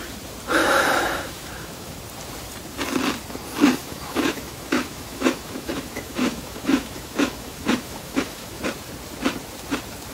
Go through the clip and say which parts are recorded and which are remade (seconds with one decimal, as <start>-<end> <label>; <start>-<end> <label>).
0.0-0.6 recorded; 0.6-2.0 remade; 2.0-3.8 recorded; 3.8-8.6 remade; 8.6-10.1 recorded